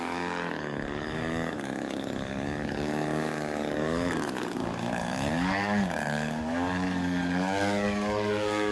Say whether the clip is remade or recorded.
remade